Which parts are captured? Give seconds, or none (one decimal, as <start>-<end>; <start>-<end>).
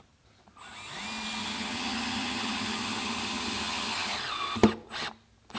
0.0-1.4; 4.2-5.6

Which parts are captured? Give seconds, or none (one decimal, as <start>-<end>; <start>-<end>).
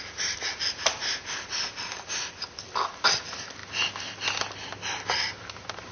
0.0-5.9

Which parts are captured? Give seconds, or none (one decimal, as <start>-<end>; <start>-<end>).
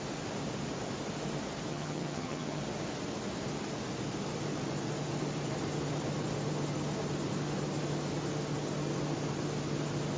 0.0-1.7; 2.6-10.2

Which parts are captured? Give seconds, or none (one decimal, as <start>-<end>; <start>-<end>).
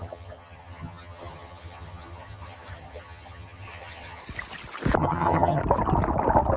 4.2-5.0; 5.6-6.6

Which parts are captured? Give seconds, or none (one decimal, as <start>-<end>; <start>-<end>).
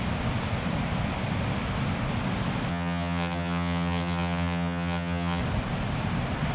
0.0-2.7; 5.4-6.5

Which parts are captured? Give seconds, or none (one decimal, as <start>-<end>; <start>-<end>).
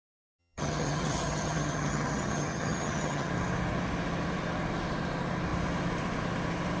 0.0-0.4; 3.3-6.8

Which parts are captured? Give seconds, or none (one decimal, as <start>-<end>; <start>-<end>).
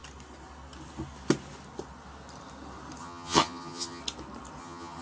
0.0-3.0; 4.0-4.6